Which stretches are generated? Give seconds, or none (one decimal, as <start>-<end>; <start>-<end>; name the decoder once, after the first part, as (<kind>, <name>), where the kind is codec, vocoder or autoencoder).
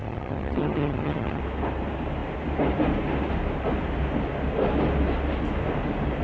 0.0-1.4 (vocoder, HiFi-GAN)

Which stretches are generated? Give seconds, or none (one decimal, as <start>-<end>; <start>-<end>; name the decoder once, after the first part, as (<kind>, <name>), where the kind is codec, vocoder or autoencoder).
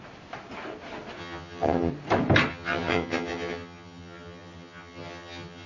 1.2-1.9 (vocoder, HiFi-GAN); 2.5-5.7